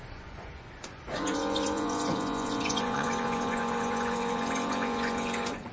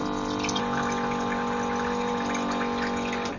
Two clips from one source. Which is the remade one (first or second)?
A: first